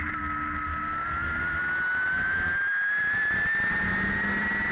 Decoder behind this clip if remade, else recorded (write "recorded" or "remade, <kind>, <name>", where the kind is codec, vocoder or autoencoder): recorded